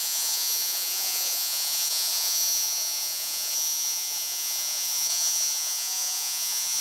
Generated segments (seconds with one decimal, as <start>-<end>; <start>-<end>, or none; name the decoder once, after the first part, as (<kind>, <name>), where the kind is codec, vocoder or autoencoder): 0.0-6.8 (vocoder, Vocos)